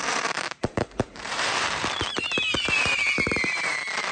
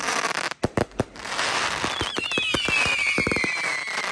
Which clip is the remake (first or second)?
first